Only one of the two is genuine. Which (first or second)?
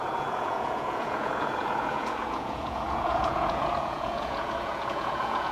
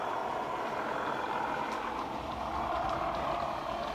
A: second